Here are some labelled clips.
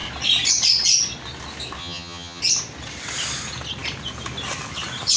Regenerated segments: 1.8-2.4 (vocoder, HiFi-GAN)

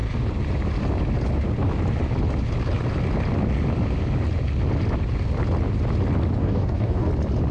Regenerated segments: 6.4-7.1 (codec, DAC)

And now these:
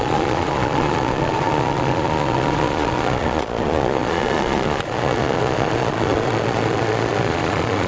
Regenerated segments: 0.0-7.9 (vocoder, Vocos)